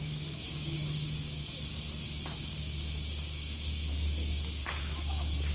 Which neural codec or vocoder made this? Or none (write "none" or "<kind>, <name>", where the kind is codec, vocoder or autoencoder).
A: codec, DAC